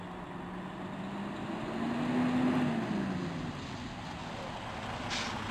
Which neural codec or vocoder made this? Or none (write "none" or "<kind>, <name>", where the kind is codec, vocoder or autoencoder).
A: none